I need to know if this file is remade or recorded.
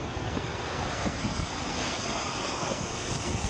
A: remade